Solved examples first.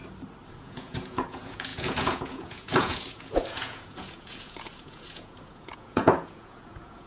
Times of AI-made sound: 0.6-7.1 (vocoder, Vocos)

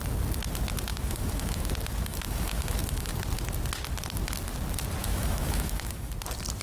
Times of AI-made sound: 0.9-1.7 (autoencoder, DAC-VAE); 2.1-3.1; 5.0-6.1

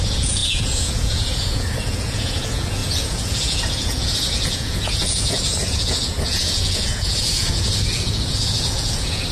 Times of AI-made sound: 0.0-9.3 (vocoder, Vocos)

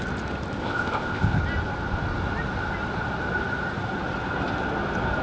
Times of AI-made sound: 0.6-1.4 (codec, ZipCodec)